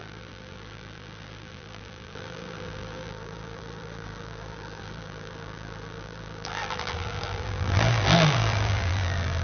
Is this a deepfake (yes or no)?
yes